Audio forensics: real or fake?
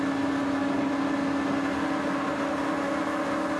real